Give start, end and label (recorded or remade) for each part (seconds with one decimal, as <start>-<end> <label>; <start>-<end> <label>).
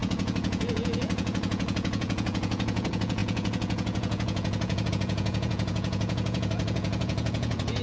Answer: 0.0-7.8 remade